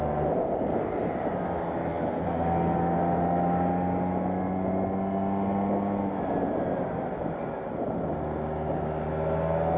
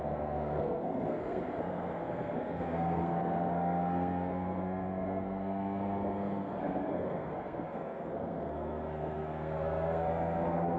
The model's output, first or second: second